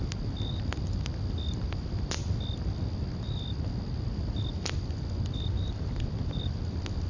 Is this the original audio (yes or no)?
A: yes